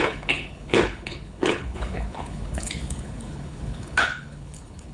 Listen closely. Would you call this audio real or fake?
fake